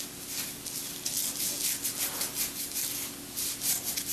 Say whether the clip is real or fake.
real